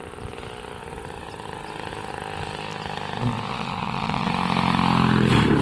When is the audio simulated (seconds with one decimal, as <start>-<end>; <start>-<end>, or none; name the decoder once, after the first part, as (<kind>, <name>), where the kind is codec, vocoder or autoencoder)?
3.5-4.3 (vocoder, Vocos)